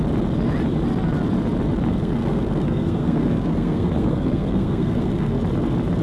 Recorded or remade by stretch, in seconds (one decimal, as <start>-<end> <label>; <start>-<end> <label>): 0.0-2.0 recorded; 2.0-5.4 remade; 5.4-6.0 recorded